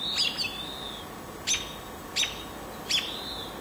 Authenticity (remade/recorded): recorded